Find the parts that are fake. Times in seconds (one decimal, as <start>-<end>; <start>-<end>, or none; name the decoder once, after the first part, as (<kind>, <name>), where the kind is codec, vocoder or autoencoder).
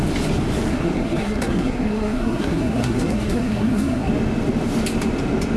0.7-4.1 (codec, SNAC)